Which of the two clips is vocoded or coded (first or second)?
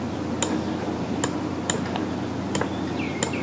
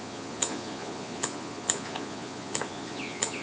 second